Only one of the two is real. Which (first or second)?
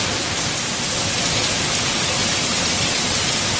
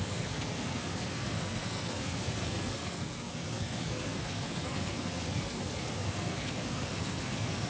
first